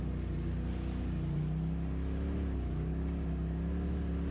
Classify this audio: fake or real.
real